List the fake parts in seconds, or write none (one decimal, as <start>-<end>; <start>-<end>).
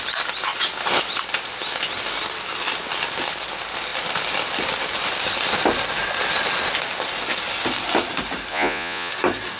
8.5-9.1